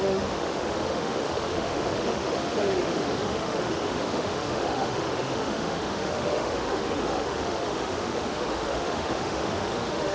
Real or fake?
fake